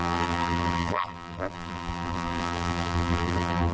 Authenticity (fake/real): fake